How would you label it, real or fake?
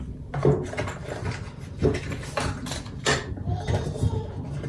fake